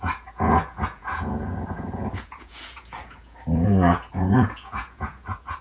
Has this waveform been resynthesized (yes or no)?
yes